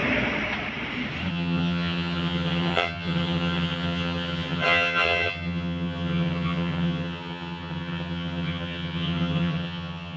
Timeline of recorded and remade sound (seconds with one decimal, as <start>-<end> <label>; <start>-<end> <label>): 0.0-1.3 recorded; 1.3-10.2 remade